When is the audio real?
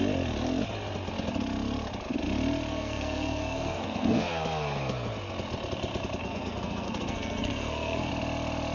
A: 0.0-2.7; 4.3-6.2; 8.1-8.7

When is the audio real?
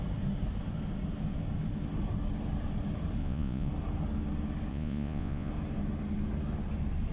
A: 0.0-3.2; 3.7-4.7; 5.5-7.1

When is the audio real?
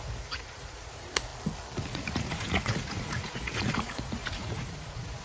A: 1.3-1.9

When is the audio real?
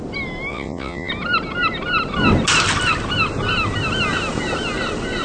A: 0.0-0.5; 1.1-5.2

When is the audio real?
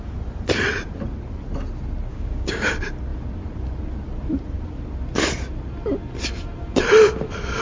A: 0.0-2.1; 2.7-7.6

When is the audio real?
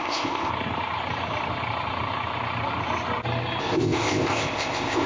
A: 0.5-3.6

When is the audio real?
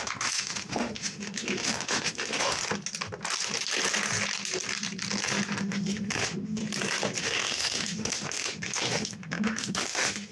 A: 2.6-5.6; 6.6-7.2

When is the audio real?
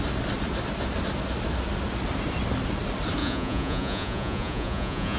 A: 0.0-3.2